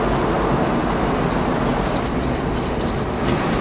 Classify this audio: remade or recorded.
recorded